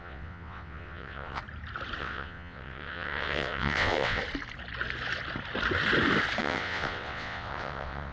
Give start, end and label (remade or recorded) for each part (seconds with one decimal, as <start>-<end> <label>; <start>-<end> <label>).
0.0-1.4 remade; 1.4-2.0 recorded; 2.0-4.2 remade; 4.2-6.4 recorded; 6.4-8.1 remade